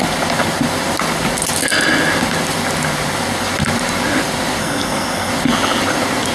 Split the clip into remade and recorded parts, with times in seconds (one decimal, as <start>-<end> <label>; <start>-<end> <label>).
0.0-4.6 recorded; 4.6-5.3 remade; 5.3-6.3 recorded

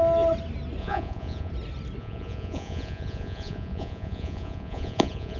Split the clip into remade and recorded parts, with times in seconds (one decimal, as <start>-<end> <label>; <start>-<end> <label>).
0.0-0.8 recorded; 0.8-1.5 remade; 1.5-2.0 recorded; 2.0-5.4 remade